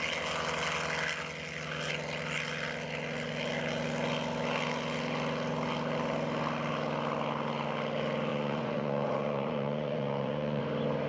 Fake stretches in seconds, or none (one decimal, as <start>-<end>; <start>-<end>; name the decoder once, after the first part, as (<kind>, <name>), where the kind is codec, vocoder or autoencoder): 8.3-10.6 (vocoder, Vocos)